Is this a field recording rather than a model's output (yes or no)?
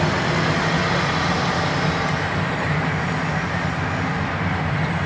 yes